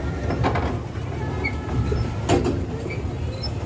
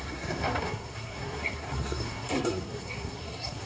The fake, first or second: second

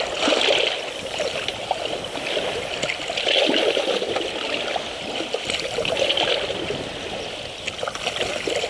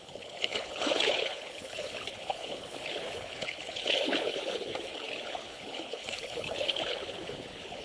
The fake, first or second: second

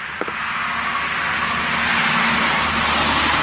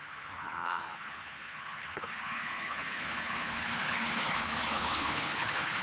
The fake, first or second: second